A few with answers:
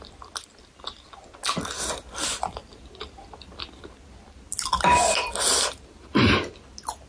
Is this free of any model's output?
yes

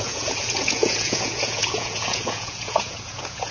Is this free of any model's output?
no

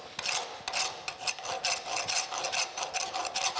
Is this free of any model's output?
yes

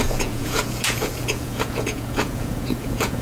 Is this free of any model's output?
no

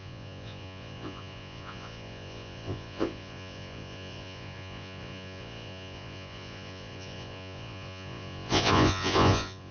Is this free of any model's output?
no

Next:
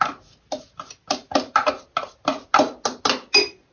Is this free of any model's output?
yes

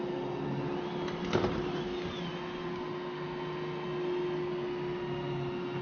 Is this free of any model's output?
yes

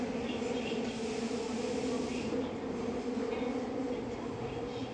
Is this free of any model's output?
yes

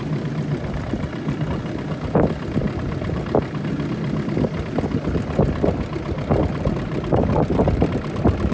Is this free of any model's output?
yes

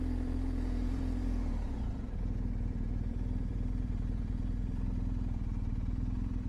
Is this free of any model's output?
no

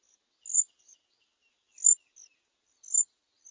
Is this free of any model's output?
yes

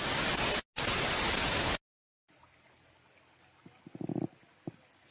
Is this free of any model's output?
yes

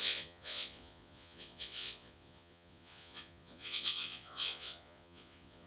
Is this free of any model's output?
no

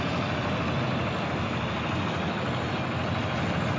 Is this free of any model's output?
yes